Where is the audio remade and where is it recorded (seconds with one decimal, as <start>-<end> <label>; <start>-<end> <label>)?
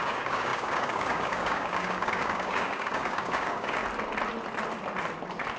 0.0-3.8 remade; 3.8-5.6 recorded